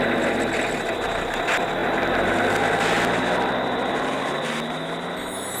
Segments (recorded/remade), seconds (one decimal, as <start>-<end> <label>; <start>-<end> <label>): 0.0-5.6 recorded